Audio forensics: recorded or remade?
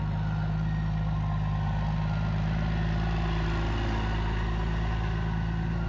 recorded